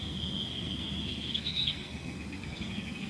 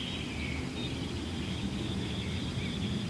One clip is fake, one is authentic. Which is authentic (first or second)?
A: second